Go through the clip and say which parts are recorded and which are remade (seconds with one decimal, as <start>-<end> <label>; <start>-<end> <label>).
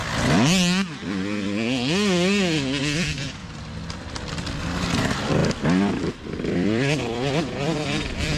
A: 0.0-2.8 recorded; 2.8-3.4 remade; 3.4-5.0 recorded; 5.0-5.4 remade; 5.4-6.1 recorded; 6.1-8.4 remade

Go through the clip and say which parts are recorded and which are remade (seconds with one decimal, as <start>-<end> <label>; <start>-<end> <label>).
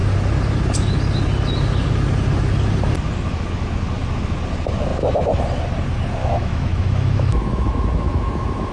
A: 0.0-6.2 recorded; 6.2-8.7 remade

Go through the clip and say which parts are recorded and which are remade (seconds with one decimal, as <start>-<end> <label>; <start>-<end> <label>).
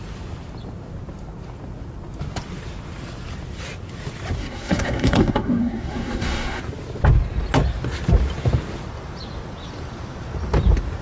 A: 0.0-4.4 recorded; 4.4-6.6 remade; 6.6-11.0 recorded